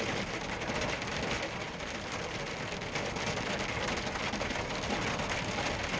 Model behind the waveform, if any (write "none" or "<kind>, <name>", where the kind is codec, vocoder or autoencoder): none